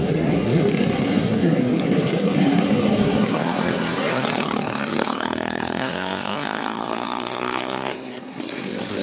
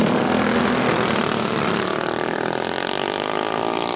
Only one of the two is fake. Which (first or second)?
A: first